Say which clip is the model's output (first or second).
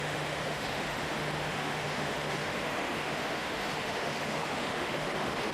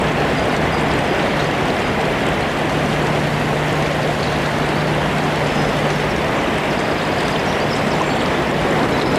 first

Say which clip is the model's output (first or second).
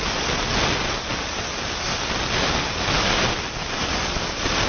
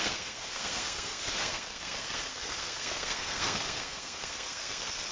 second